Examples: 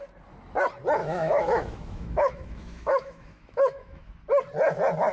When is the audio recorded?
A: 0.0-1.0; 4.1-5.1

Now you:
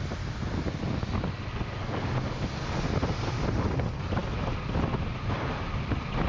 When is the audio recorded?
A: 0.0-6.3

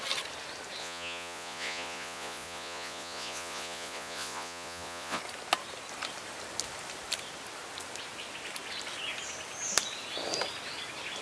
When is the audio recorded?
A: 0.0-0.8; 5.2-11.2

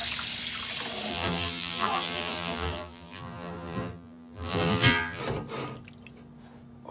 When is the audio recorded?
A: 0.0-1.1; 5.2-6.9

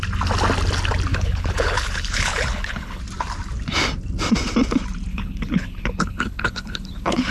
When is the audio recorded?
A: 0.0-1.1; 3.0-5.1

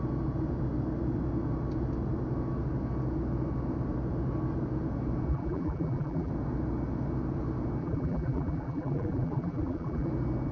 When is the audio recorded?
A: 0.0-5.3; 6.3-7.8; 10.1-10.5

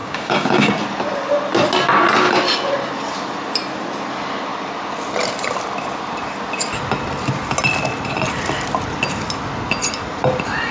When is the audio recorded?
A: 0.7-10.7

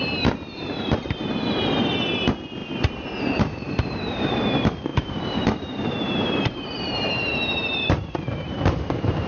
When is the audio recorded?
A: none